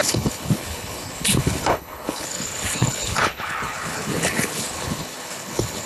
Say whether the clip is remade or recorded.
remade